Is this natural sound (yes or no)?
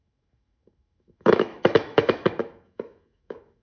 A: no